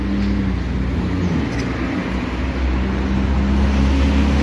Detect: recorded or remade recorded